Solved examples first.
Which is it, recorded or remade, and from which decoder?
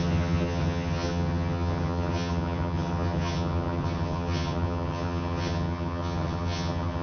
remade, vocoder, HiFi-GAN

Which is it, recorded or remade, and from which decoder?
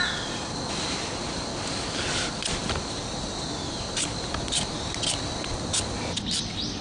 recorded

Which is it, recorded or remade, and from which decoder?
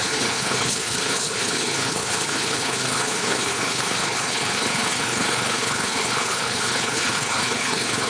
remade, codec, HILCodec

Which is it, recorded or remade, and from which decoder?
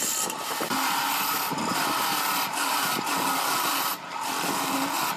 recorded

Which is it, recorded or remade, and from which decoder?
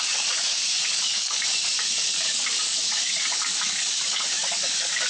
remade, codec, DAC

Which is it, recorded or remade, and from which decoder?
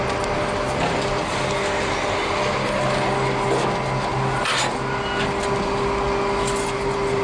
recorded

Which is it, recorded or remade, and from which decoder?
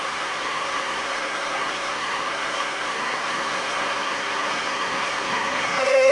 remade, codec, SNAC